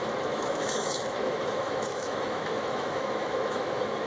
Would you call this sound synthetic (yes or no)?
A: yes